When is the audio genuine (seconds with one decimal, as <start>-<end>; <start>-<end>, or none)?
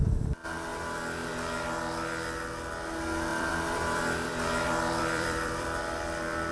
0.0-3.3; 5.8-6.5